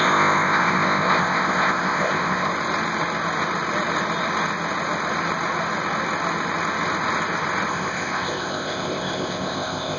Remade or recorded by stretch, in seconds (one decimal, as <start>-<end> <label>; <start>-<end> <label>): 0.0-2.5 remade; 2.5-7.7 recorded; 7.7-10.0 remade